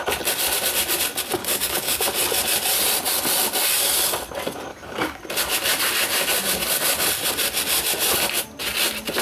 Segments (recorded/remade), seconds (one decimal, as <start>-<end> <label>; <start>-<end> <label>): 0.0-1.4 recorded; 1.4-2.0 remade; 2.0-4.7 recorded; 4.7-5.2 remade; 5.2-9.2 recorded